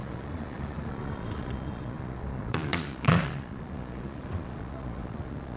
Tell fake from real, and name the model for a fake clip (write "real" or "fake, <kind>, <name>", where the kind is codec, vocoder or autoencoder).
fake, vocoder, Vocos